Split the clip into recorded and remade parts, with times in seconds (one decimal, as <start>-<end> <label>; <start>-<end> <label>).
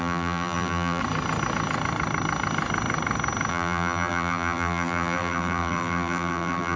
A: 0.0-1.0 remade; 1.0-3.5 recorded; 3.5-6.8 remade